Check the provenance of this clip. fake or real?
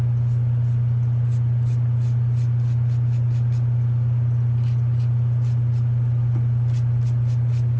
real